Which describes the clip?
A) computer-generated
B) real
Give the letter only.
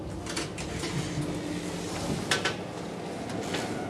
B